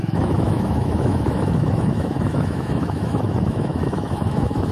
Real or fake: fake